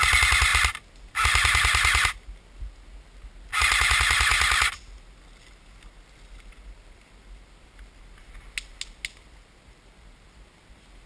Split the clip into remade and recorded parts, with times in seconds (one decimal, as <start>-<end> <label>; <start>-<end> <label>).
0.0-11.1 recorded